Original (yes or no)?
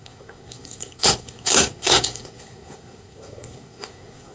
no